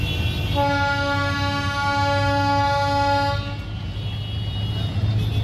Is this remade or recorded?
recorded